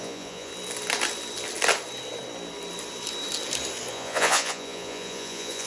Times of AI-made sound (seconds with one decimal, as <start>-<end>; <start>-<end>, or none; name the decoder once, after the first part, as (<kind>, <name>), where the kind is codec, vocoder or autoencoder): 0.0-0.5 (vocoder, Vocos); 3.9-5.7